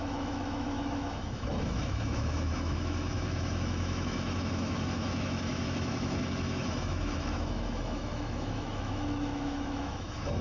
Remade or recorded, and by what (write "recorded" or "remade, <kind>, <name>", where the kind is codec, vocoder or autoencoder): remade, autoencoder, DAC-VAE